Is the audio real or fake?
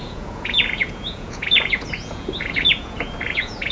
fake